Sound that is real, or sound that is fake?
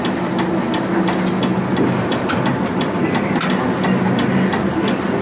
real